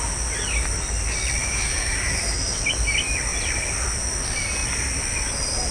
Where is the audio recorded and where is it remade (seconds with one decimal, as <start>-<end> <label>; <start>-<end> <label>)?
0.0-1.4 recorded; 1.4-2.6 remade; 2.6-5.7 recorded